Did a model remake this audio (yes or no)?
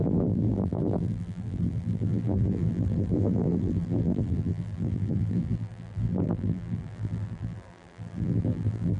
yes